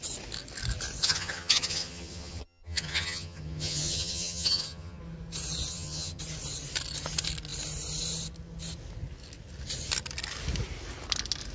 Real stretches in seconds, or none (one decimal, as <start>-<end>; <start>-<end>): 0.0-1.0; 5.0-5.7; 6.2-11.5